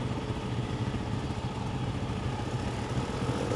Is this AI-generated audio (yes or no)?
no